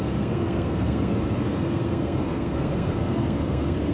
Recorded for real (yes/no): no